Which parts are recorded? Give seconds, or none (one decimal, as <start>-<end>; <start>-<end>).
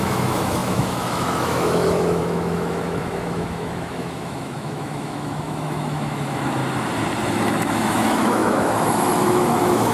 6.6-7.3